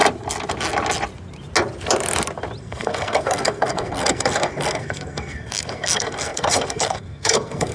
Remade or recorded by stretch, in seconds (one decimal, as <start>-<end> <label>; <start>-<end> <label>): 0.0-2.6 recorded; 2.6-7.7 remade